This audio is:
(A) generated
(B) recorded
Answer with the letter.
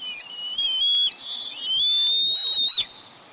B